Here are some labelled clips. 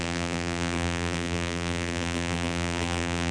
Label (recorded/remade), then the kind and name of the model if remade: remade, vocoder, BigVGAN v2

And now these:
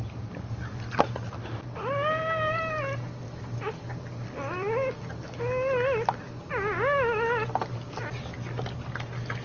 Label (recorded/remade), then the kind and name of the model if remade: recorded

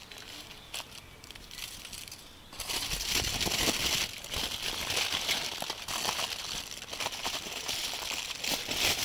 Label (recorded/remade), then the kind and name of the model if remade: recorded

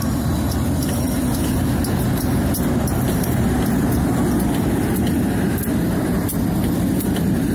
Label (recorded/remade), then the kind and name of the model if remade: recorded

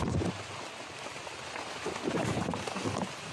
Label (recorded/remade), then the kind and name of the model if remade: recorded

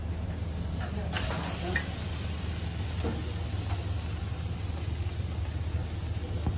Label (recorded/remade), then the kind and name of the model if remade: recorded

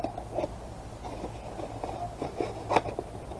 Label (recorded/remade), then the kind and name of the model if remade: recorded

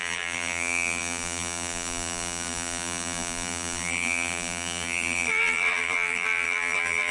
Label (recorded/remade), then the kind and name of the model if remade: remade, vocoder, BigVGAN v2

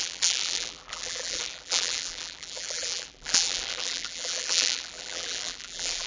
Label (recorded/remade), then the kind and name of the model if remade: remade, vocoder, BigVGAN v2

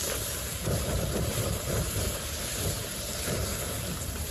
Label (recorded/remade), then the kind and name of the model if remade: remade, vocoder, BigVGAN v2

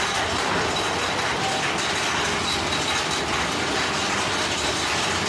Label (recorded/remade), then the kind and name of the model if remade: recorded